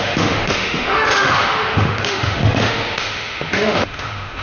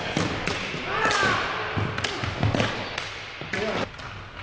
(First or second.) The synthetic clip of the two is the first